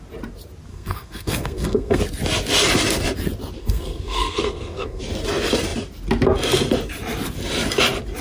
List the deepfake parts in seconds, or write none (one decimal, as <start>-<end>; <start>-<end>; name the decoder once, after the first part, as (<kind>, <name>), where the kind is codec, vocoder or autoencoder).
0.7-2.0 (codec, SNAC); 3.6-5.0